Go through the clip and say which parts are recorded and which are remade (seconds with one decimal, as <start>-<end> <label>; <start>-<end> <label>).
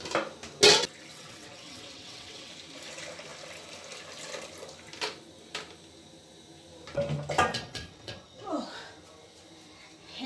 0.0-1.1 recorded; 1.1-2.5 remade; 2.5-7.5 recorded; 7.5-8.5 remade; 8.5-10.3 recorded